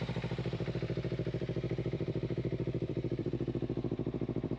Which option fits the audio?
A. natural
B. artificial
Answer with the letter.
B